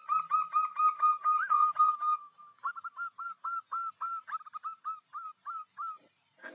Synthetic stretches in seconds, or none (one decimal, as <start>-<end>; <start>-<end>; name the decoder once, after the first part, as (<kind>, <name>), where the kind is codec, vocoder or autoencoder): none